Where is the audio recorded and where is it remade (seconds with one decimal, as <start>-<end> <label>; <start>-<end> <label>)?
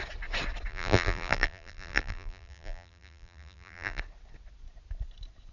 0.0-0.7 recorded; 0.7-4.0 remade; 4.0-5.5 recorded